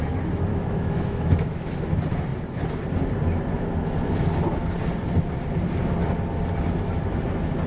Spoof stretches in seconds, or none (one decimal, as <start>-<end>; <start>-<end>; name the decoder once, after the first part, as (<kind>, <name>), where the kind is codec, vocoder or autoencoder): 0.5-1.7 (autoencoder, DAC-VAE)